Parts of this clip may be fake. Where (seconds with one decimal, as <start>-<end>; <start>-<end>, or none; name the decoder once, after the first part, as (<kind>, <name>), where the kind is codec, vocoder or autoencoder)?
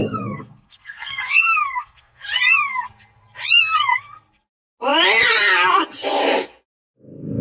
0.0-2.2 (codec, SNAC)